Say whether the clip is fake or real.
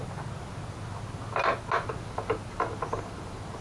real